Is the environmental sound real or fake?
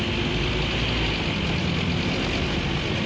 real